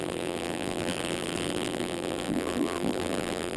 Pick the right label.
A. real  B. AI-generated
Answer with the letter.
B